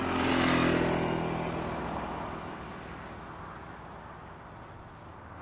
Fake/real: real